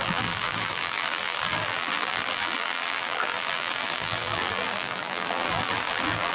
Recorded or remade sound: remade